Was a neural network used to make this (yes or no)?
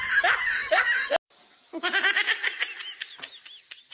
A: no